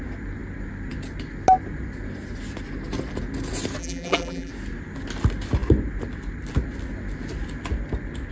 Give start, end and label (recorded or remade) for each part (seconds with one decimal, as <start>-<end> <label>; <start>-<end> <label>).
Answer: 0.0-3.8 recorded; 3.8-4.5 remade; 4.5-8.3 recorded

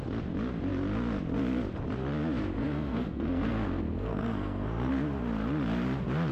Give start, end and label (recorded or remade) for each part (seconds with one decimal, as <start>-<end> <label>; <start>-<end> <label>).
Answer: 0.0-2.6 recorded; 2.6-4.9 remade; 4.9-6.3 recorded

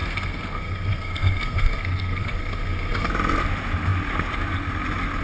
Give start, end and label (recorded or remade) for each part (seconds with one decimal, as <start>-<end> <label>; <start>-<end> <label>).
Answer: 0.0-3.1 remade; 3.1-5.2 recorded

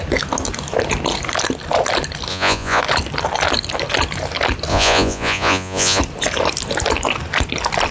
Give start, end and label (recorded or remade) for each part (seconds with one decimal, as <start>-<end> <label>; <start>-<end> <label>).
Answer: 0.0-2.3 recorded; 2.3-2.8 remade; 2.8-4.7 recorded; 4.7-6.0 remade; 6.0-7.9 recorded

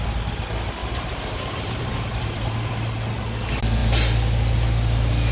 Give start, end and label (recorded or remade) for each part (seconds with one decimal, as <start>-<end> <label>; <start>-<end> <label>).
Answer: 0.0-0.8 recorded; 0.8-2.7 remade; 2.7-5.3 recorded

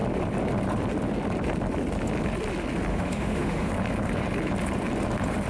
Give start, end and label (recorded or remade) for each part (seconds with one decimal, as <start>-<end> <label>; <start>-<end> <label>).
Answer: 0.0-2.9 recorded; 2.9-3.7 remade; 3.7-5.5 recorded

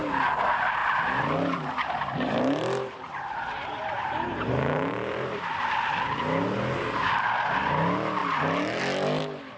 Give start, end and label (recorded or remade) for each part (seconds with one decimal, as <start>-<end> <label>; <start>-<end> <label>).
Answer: 0.0-0.8 recorded; 0.8-5.4 remade; 5.4-9.6 recorded

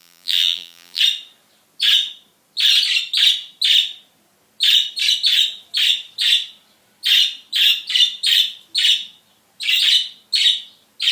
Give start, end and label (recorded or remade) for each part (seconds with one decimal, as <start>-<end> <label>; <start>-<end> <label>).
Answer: 0.0-1.0 remade; 1.0-11.1 recorded